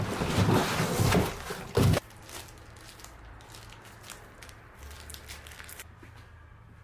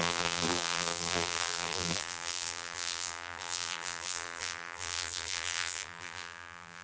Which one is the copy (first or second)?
second